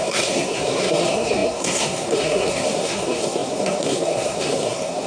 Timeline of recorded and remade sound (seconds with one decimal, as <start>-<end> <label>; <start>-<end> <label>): 0.0-5.1 remade